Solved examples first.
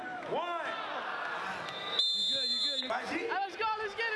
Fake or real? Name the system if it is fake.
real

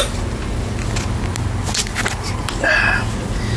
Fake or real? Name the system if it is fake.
real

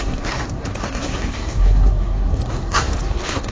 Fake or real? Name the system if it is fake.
fake, codec, SNAC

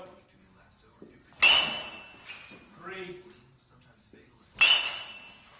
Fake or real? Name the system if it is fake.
real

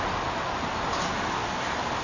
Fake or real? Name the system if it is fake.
real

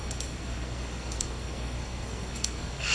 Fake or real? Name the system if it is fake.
fake, codec, SNAC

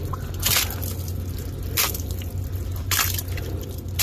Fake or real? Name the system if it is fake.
real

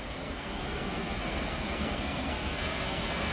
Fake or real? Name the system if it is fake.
fake, codec, SNAC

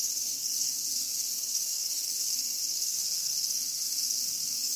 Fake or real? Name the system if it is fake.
fake, codec, SNAC